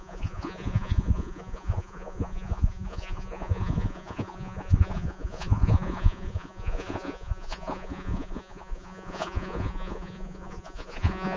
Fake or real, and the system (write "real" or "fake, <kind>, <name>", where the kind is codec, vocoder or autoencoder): fake, vocoder, Vocos